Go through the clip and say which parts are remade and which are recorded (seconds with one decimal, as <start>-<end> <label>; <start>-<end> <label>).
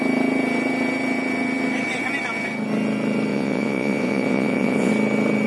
0.0-3.3 recorded; 3.3-4.9 remade; 4.9-5.5 recorded